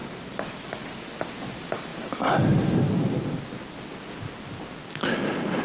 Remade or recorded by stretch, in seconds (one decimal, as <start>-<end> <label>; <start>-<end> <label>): 0.0-5.6 recorded